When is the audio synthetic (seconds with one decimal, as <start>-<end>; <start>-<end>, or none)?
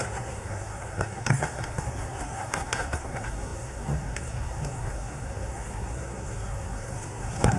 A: 0.0-7.6